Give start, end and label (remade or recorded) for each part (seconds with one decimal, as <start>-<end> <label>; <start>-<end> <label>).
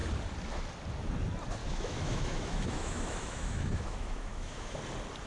0.0-1.6 recorded; 1.6-4.8 remade; 4.8-5.3 recorded